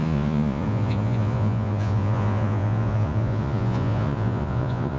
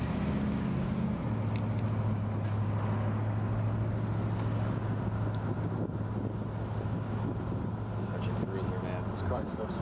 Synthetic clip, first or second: first